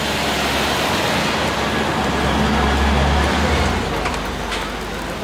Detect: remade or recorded recorded